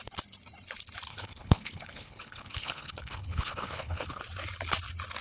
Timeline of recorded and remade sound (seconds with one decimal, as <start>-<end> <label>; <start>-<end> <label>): 0.0-1.1 recorded; 1.1-4.2 remade; 4.2-5.2 recorded